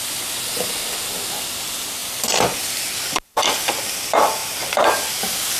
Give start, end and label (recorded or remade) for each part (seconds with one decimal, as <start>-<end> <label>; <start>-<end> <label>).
0.0-5.6 recorded